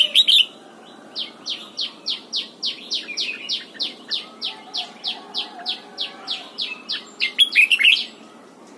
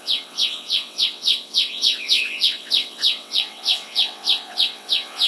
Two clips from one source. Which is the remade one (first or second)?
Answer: second